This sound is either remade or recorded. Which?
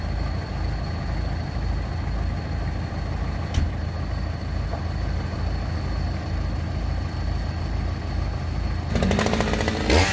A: recorded